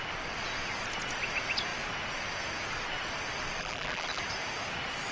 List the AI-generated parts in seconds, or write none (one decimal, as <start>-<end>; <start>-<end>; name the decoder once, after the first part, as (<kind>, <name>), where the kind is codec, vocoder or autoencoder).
3.6-4.2 (vocoder, BigVGAN v2)